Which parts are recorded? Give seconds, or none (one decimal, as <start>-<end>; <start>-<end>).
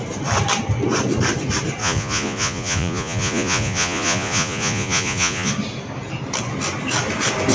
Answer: 0.0-1.8; 5.5-7.5